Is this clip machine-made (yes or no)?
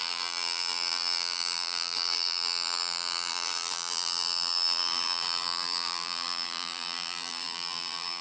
yes